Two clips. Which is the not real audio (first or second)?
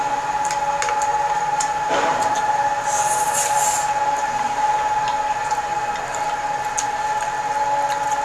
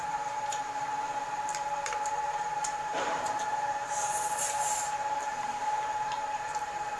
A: second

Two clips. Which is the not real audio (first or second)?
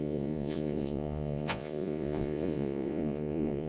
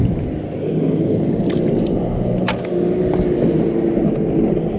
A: first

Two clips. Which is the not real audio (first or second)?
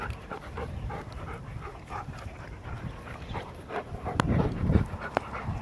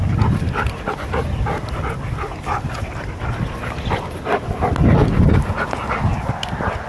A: first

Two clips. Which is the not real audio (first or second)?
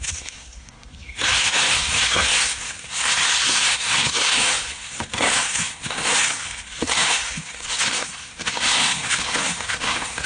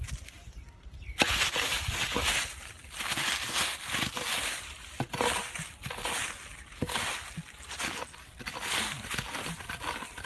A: first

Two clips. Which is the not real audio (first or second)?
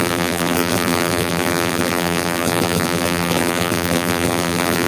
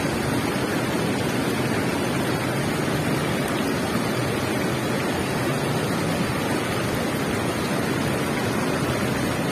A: first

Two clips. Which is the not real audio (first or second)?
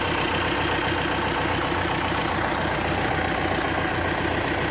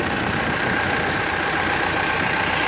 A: second